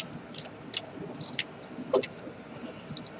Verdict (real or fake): real